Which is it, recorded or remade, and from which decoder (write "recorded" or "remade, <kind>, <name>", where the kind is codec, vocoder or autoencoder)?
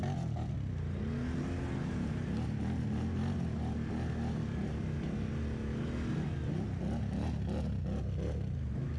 recorded